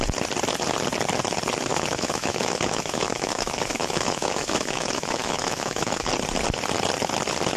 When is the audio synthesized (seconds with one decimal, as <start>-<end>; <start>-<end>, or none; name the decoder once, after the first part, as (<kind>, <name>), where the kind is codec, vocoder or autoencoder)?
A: 1.7-6.1 (autoencoder, DAC-VAE)